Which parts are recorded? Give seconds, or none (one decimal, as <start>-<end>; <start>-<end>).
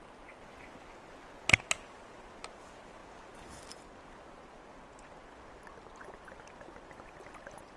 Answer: 0.0-7.8